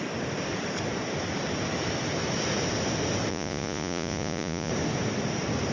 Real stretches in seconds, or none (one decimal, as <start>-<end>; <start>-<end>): 0.0-3.3; 4.7-5.7